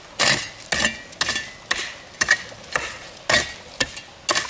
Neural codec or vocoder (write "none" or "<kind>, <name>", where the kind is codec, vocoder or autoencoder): none